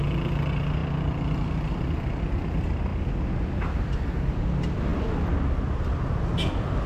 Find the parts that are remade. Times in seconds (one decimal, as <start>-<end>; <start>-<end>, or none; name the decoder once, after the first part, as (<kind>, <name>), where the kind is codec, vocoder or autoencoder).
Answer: none